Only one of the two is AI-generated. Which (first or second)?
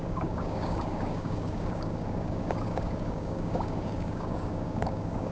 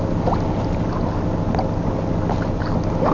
first